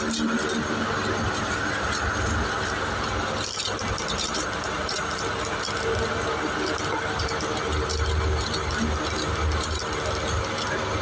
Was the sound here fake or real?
real